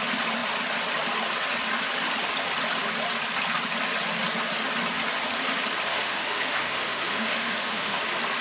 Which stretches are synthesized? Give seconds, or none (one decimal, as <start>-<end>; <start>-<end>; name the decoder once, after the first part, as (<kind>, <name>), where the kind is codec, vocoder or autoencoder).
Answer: 5.9-8.0 (autoencoder, DAC-VAE)